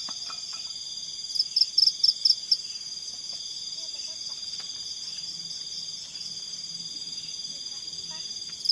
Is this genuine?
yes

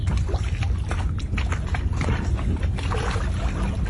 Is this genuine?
yes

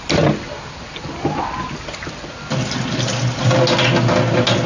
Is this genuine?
yes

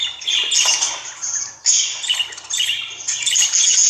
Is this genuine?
yes